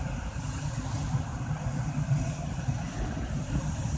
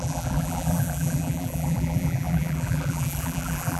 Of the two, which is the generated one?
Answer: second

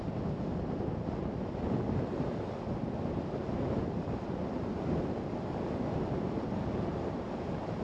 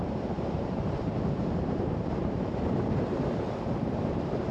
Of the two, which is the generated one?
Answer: second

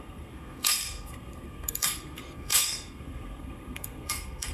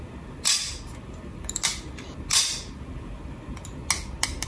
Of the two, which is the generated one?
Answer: first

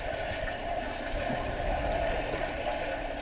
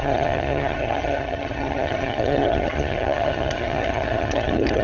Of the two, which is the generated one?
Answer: second